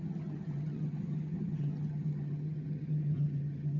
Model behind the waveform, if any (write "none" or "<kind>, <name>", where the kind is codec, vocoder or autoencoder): vocoder, HiFi-GAN